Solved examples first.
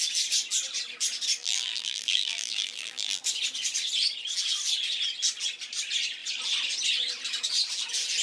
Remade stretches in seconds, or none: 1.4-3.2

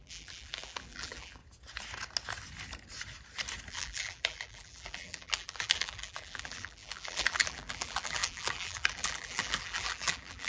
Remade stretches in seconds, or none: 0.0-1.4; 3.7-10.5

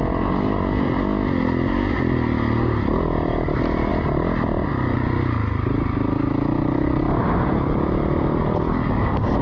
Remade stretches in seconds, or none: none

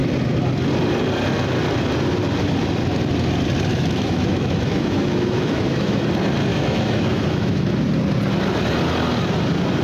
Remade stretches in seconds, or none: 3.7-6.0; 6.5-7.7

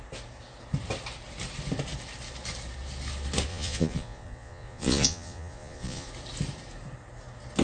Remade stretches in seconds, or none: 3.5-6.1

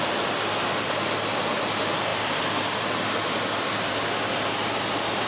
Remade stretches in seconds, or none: 2.1-3.2

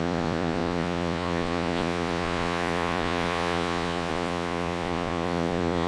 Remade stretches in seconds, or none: 0.0-5.9

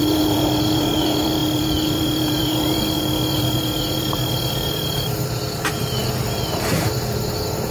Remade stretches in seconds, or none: 0.0-7.7